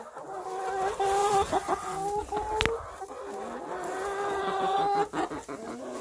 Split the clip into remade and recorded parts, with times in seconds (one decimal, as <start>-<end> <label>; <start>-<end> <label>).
0.0-1.2 recorded; 1.2-1.8 remade; 1.8-6.0 recorded